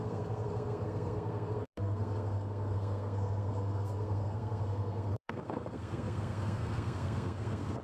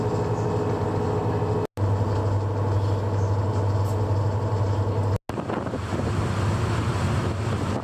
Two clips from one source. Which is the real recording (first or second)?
second